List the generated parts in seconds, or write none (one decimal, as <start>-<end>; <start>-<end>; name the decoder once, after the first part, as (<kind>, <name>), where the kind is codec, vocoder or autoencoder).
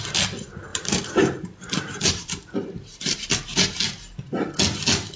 0.7-3.8 (vocoder, BigVGAN v2)